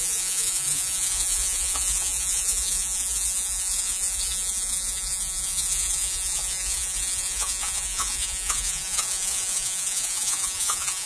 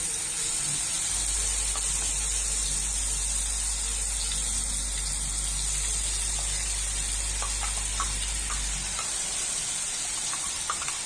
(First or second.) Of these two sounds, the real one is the second